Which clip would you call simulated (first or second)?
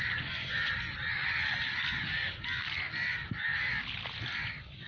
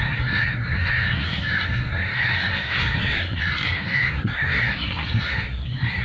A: second